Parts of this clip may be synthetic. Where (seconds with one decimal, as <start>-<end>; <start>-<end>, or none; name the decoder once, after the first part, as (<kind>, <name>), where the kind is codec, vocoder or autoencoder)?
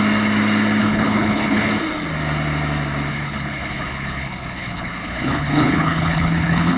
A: 0.8-1.7 (codec, HILCodec); 3.1-6.8